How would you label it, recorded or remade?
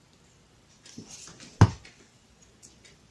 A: recorded